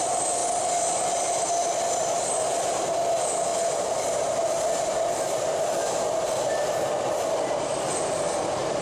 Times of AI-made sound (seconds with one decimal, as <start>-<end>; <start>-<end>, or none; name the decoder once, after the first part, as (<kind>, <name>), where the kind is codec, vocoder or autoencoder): none